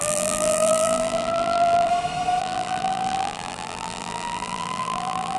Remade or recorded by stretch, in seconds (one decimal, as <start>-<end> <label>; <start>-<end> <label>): 0.0-1.9 remade; 1.9-2.4 recorded; 2.4-5.4 remade